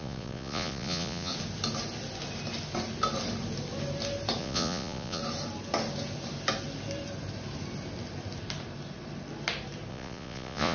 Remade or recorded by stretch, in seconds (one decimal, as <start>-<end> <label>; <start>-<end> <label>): 0.0-1.3 remade; 1.3-4.4 recorded; 4.4-5.2 remade; 5.2-9.9 recorded; 9.9-10.7 remade